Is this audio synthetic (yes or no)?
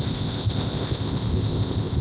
yes